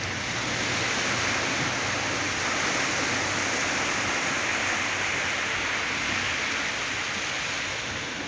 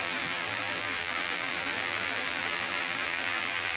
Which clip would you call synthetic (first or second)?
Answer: second